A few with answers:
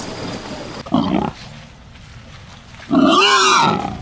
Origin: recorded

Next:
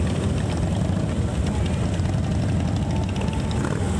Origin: recorded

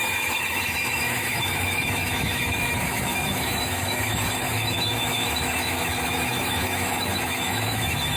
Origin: remade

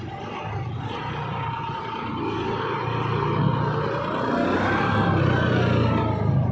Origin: recorded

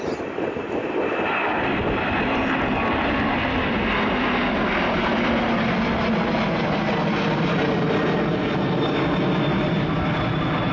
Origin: recorded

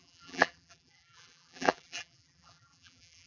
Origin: remade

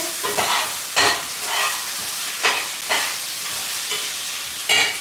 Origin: recorded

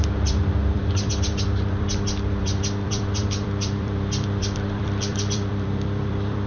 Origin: remade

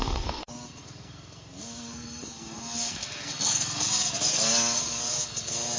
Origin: remade